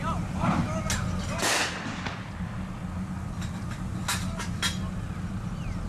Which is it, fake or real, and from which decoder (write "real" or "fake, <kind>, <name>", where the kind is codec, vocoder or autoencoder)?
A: real